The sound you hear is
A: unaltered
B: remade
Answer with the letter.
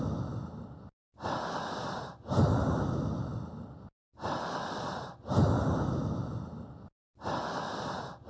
A